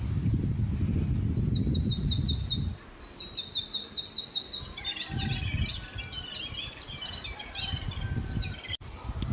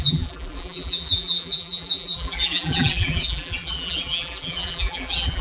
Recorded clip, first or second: first